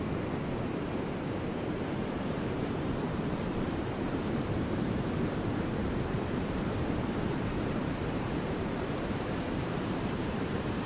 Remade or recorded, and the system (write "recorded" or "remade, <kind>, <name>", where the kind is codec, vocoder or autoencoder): remade, vocoder, BigVGAN v2